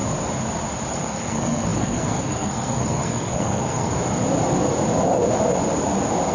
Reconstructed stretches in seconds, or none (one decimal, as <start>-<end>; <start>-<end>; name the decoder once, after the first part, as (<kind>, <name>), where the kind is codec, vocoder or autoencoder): 0.9-3.9 (codec, SNAC)

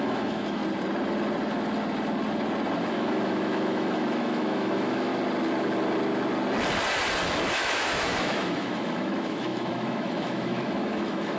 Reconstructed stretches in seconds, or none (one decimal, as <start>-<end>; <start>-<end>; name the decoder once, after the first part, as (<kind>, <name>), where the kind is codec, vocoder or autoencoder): 0.0-0.6 (autoencoder, DAC-VAE); 2.8-5.1; 7.6-11.4

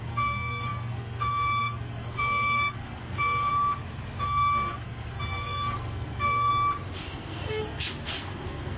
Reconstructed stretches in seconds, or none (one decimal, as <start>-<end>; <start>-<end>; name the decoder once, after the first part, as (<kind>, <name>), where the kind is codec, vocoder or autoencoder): 0.0-3.5 (codec, SNAC); 4.2-6.5; 7.0-8.8

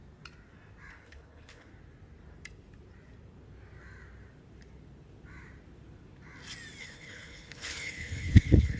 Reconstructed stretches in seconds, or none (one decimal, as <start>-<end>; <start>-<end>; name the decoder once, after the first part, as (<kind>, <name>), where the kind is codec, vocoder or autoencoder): 0.9-1.7 (codec, HILCodec); 6.8-8.8

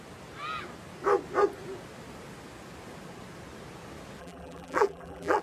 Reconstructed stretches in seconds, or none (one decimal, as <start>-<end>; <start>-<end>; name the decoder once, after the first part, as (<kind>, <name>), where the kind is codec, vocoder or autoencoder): 4.2-5.4 (vocoder, BigVGAN v2)

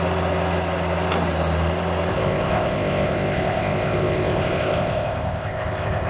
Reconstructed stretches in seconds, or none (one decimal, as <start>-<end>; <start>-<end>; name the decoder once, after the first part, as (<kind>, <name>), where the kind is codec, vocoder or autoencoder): 2.1-6.1 (codec, ZipCodec)

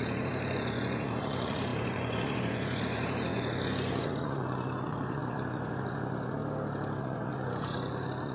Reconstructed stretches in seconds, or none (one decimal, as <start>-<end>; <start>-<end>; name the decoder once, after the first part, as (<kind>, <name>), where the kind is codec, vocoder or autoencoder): 0.0-6.4 (vocoder, Vocos); 7.0-8.3

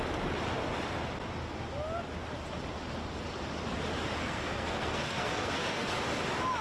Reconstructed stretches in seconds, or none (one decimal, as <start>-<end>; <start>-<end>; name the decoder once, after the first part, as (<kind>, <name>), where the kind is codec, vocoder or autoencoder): 4.2-6.0 (codec, SNAC)